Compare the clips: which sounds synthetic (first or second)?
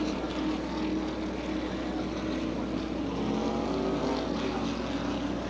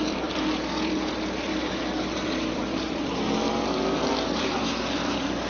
second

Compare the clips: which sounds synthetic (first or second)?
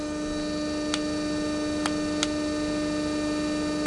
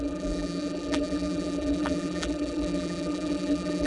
second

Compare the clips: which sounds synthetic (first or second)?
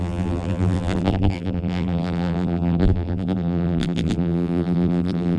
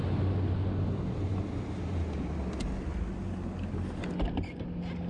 first